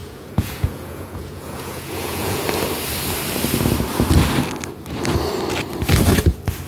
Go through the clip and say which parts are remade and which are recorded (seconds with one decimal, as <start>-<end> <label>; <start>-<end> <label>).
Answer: 0.0-2.4 remade; 2.4-6.7 recorded